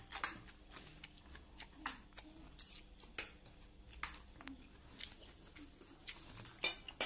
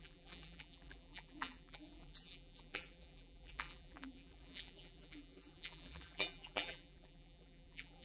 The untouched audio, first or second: first